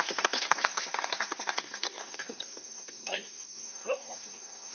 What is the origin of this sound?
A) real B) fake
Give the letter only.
B